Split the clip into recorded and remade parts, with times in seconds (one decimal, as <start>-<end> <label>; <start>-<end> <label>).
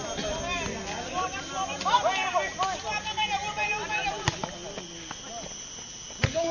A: 0.0-6.5 recorded